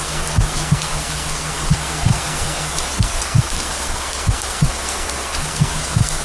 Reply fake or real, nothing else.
fake